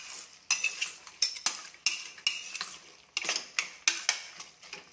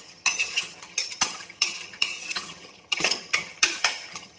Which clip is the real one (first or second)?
first